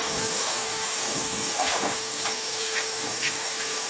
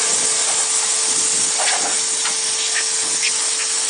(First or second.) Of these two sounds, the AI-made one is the first